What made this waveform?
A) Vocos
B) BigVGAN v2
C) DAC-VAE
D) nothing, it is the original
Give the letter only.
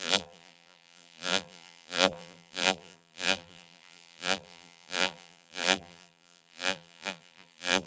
B